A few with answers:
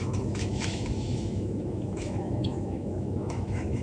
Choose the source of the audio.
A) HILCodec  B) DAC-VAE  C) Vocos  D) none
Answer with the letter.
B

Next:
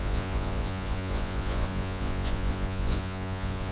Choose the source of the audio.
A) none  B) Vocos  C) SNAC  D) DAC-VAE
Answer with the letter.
B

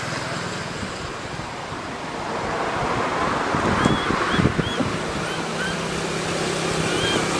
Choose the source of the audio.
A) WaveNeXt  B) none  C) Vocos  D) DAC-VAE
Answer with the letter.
B